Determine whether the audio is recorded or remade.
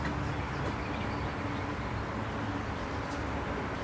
recorded